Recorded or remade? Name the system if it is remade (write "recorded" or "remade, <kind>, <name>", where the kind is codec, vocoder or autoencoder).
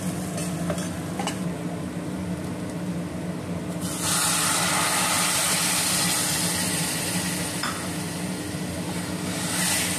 recorded